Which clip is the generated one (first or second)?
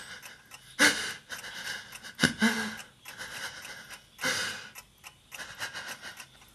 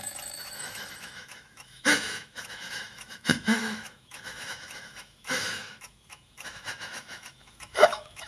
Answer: second